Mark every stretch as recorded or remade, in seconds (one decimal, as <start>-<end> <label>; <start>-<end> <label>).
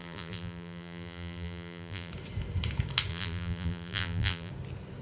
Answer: 0.0-2.1 remade; 2.1-3.1 recorded; 3.1-4.5 remade; 4.5-5.0 recorded